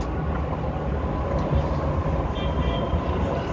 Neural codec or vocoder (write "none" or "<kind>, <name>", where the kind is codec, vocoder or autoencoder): none